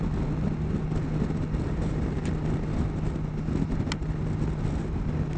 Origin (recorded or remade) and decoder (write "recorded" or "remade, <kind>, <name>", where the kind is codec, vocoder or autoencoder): recorded